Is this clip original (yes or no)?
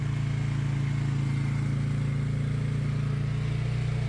yes